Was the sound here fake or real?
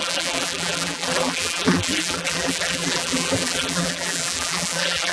fake